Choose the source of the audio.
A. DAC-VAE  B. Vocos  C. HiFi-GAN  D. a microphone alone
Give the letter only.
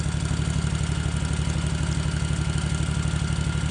D